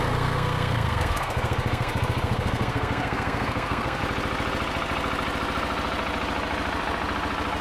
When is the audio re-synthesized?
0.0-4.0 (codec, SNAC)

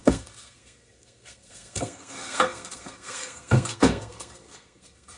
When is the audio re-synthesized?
0.0-5.2 (codec, SNAC)

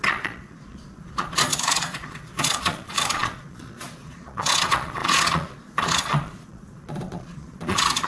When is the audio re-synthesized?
0.0-8.1 (vocoder, Vocos)